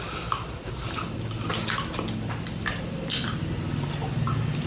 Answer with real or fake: real